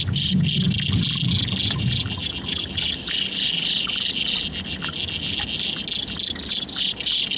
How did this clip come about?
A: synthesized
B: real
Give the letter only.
B